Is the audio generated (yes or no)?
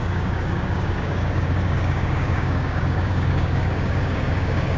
yes